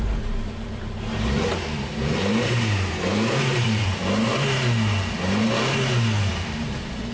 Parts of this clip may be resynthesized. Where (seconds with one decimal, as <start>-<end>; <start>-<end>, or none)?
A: 0.0-4.0; 6.3-7.1